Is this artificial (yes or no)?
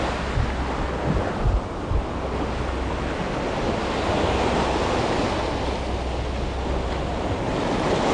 no